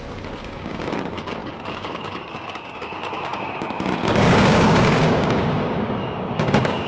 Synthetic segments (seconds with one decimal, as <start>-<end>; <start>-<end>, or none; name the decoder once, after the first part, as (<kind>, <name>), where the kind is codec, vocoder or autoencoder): 0.0-6.9 (codec, DAC)